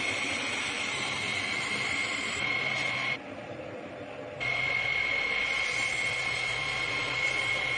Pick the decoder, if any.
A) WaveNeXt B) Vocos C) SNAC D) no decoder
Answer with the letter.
D